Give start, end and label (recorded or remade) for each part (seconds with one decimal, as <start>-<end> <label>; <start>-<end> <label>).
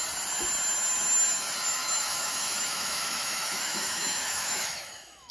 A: 0.0-1.8 recorded; 1.8-5.3 remade